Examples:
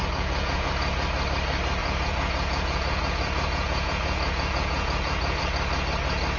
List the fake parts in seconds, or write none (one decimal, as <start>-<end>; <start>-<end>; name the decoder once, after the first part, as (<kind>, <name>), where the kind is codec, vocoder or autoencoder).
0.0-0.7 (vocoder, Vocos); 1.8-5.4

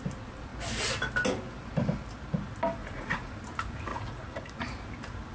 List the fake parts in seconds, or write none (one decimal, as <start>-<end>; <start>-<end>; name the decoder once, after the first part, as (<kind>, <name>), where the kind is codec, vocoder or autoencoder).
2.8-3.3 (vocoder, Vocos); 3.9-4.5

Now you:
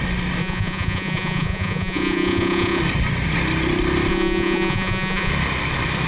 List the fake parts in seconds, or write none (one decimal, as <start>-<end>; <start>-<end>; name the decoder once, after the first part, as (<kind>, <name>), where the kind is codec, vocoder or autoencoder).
0.4-2.8 (vocoder, Vocos); 4.1-5.3

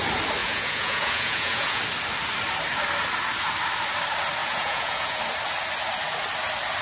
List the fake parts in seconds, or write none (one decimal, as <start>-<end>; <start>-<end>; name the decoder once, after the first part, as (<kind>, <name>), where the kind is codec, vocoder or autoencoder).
0.4-1.8 (vocoder, Vocos); 4.4-5.2

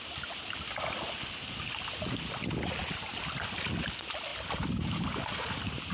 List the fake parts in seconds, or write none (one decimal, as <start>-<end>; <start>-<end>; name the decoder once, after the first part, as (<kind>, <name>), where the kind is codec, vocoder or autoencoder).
none

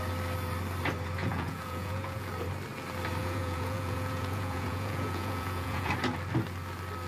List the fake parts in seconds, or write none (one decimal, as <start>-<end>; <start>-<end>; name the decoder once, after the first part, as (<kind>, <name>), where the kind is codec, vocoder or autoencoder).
1.2-2.3 (vocoder, Vocos); 3.2-5.9

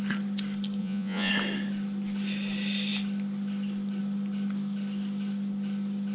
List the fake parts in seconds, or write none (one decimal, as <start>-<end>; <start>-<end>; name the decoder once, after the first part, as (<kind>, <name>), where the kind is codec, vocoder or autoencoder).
0.8-1.3 (vocoder, Vocos)